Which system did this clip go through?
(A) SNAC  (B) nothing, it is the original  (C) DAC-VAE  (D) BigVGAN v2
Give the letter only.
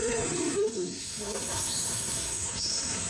A